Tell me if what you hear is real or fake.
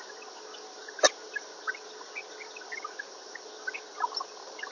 real